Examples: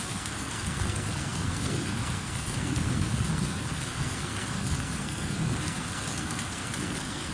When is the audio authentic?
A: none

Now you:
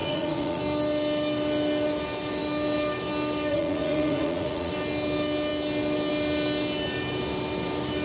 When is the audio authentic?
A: 0.6-3.5; 4.7-8.0

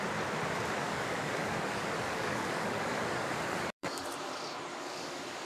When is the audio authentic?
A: 0.0-0.8; 4.1-4.7

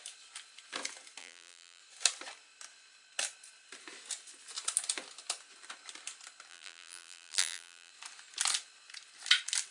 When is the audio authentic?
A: 0.0-1.2; 1.8-6.5; 7.9-9.7